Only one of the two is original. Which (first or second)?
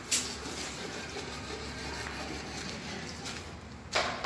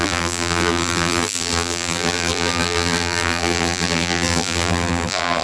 first